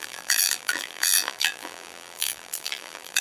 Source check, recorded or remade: remade